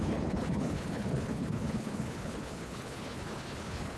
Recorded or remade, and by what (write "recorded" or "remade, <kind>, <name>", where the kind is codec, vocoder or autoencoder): remade, codec, HILCodec